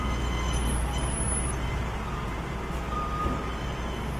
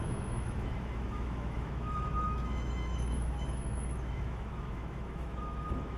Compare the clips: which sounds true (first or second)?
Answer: first